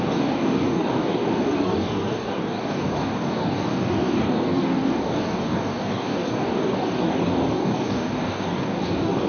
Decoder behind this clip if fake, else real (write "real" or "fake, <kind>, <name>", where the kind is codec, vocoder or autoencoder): fake, codec, DAC